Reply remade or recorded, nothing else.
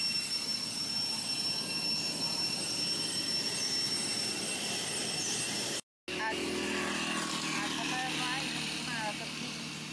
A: recorded